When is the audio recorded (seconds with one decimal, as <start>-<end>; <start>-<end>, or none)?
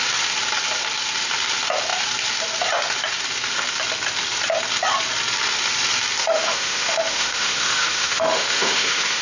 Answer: 0.0-6.2